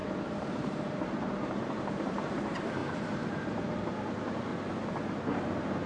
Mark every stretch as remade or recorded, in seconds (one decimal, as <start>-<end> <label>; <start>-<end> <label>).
0.0-4.5 remade; 4.5-5.2 recorded; 5.2-5.9 remade